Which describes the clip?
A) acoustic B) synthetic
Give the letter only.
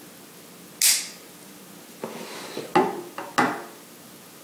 A